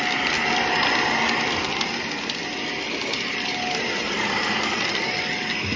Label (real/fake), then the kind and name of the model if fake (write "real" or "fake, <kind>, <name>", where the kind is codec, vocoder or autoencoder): real